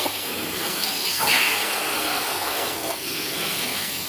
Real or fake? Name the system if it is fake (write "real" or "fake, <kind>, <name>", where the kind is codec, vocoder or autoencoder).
fake, codec, SNAC